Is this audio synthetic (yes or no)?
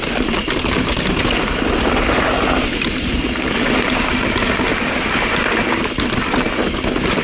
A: no